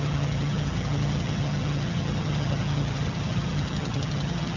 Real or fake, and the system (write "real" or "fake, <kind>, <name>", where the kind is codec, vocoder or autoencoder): fake, vocoder, HiFi-GAN